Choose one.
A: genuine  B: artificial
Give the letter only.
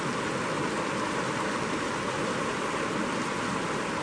A